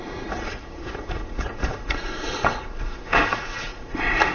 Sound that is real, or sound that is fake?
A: fake